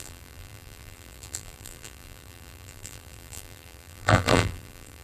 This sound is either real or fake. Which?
fake